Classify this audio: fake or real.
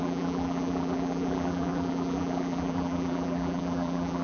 fake